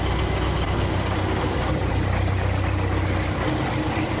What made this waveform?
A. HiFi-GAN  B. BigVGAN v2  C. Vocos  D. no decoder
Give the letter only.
D